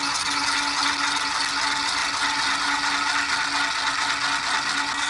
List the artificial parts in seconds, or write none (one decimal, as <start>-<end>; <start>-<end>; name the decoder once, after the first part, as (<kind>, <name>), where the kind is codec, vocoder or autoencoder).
none